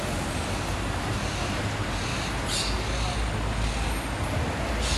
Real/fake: real